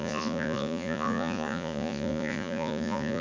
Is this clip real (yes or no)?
no